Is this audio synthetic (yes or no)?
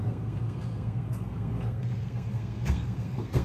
yes